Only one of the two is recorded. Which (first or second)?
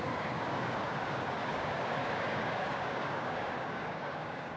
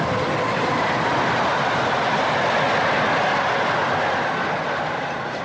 second